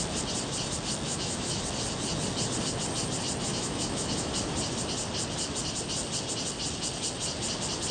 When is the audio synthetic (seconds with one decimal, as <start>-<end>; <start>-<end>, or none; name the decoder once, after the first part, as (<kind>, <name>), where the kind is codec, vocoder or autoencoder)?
1.1-1.6 (autoencoder, DAC-VAE); 3.5-4.3